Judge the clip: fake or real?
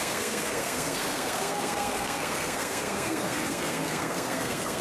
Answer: fake